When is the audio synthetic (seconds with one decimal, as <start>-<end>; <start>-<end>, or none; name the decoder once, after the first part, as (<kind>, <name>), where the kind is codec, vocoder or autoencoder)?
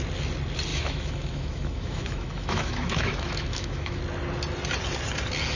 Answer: 0.7-4.0 (autoencoder, DAC-VAE)